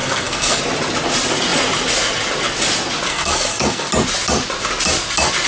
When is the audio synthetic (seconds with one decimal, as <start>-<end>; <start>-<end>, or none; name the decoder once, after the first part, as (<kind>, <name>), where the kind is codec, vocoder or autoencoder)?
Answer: 0.0-0.6 (codec, SNAC); 3.1-3.9